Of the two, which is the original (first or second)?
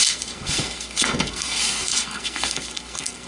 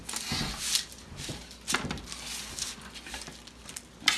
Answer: second